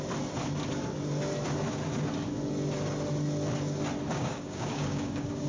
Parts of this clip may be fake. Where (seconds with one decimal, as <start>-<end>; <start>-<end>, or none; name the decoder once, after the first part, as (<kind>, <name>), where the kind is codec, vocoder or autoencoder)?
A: 4.1-5.5 (codec, DAC)